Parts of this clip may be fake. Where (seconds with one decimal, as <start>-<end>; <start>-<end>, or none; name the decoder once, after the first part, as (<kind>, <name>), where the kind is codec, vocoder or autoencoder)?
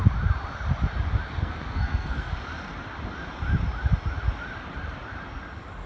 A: 1.4-2.3 (codec, SNAC)